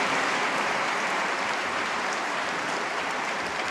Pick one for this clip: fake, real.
fake